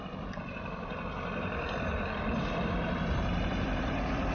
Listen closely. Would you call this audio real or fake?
fake